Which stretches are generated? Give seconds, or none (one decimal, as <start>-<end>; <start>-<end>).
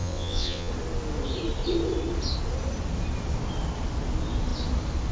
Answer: 0.0-0.7